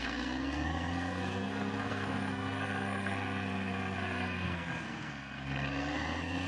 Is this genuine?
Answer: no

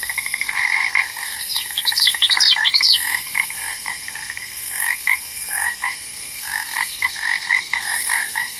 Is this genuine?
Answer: no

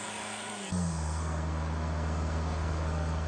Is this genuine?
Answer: no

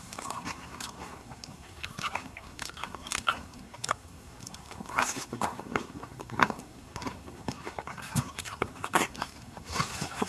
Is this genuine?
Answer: no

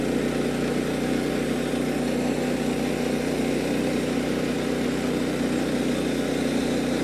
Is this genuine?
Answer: yes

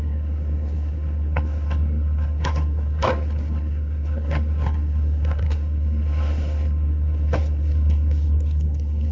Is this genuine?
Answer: no